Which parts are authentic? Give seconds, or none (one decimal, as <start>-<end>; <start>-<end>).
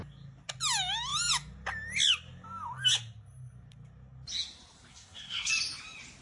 0.0-4.9; 5.5-6.2